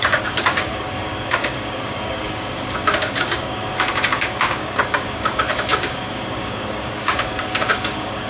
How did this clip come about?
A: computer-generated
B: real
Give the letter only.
A